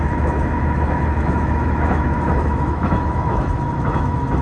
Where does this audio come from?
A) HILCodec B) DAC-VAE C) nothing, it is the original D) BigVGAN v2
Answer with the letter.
B